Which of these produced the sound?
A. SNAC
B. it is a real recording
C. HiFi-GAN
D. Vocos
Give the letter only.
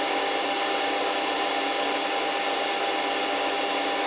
B